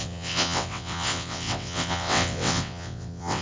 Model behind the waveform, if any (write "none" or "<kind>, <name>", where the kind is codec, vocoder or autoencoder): vocoder, WaveNeXt